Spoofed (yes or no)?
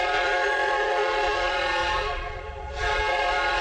yes